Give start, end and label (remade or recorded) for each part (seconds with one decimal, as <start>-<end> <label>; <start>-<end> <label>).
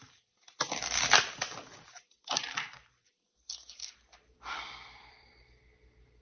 0.0-1.6 recorded; 1.6-5.3 remade; 5.3-6.2 recorded